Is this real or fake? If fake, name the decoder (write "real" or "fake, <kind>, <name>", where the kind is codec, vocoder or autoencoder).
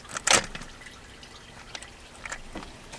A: real